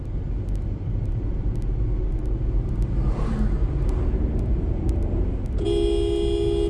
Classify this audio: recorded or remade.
recorded